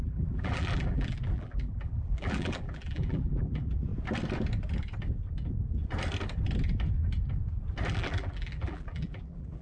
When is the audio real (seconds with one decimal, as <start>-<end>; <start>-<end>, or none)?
3.9-7.9